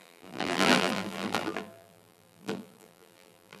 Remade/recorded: remade